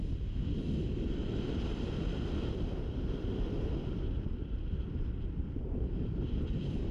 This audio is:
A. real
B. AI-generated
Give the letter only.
B